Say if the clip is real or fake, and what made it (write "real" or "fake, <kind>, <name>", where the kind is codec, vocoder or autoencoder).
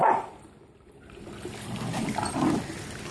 real